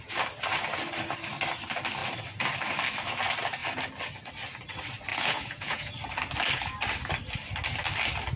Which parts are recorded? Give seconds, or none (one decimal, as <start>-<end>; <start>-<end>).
0.0-5.1; 5.9-8.4